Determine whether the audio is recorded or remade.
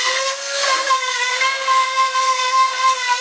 remade